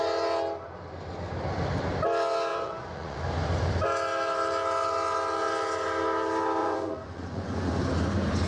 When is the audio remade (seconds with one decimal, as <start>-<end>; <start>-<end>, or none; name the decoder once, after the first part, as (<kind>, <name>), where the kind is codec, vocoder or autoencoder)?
2.5-3.2 (vocoder, Vocos); 6.6-7.8

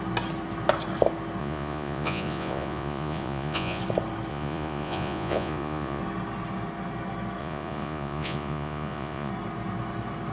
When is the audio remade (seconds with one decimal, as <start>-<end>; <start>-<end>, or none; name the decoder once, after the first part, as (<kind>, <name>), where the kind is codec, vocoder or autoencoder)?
1.4-3.8 (vocoder, Vocos); 4.3-6.0; 7.4-9.3

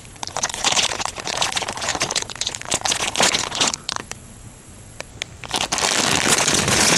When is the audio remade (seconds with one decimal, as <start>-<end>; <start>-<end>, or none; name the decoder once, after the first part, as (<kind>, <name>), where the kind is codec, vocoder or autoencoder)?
0.0-5.1 (vocoder, Vocos); 6.3-7.0

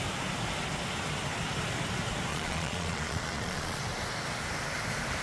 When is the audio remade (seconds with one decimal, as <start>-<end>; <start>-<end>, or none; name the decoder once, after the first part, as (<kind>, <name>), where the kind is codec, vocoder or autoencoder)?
2.3-3.8 (vocoder, Vocos)